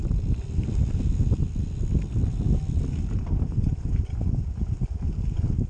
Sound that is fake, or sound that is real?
real